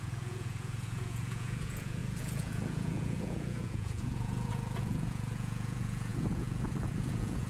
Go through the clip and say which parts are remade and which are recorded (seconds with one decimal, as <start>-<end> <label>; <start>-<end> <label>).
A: 0.0-7.5 remade